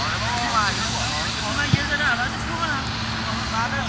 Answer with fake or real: real